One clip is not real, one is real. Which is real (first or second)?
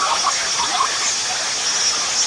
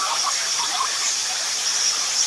first